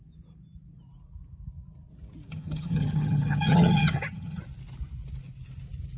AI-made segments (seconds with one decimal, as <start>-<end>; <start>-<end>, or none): 2.3-4.4